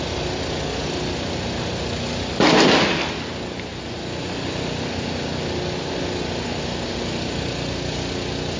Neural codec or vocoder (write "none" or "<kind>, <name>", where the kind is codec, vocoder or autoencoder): none